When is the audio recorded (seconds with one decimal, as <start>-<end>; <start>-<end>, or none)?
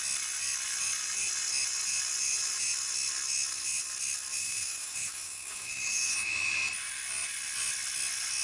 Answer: 0.0-4.4; 6.5-8.4